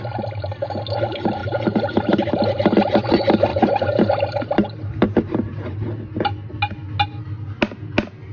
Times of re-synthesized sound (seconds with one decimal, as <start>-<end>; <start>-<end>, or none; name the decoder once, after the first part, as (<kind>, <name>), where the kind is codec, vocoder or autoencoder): 1.4-2.3 (vocoder, BigVGAN v2); 3.5-5.9